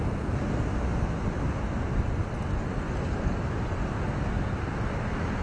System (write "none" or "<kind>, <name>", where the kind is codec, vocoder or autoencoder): none